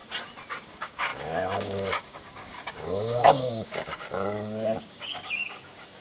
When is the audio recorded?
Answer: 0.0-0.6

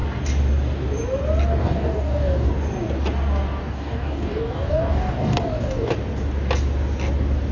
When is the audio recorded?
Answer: 0.0-1.6; 2.5-3.6; 5.9-7.5

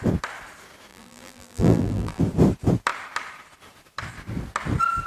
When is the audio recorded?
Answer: 0.0-0.9; 2.2-5.1

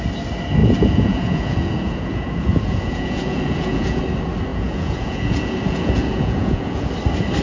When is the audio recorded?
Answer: 0.0-0.6; 4.0-4.5; 6.9-7.4

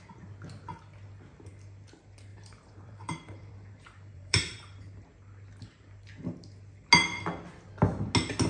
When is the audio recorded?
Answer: 0.0-2.3; 5.0-8.5

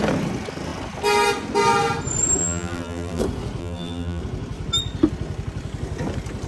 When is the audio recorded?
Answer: 0.0-2.4; 3.2-3.6; 4.2-6.5